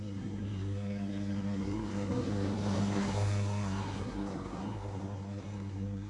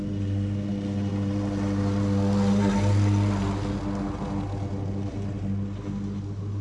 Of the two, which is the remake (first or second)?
first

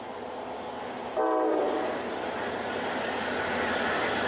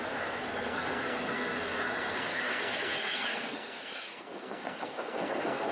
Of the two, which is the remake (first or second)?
second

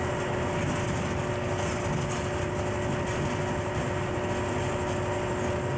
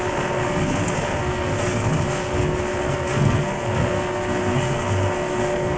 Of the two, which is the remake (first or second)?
second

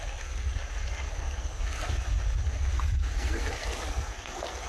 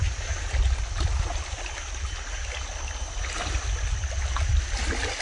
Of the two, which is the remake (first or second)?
first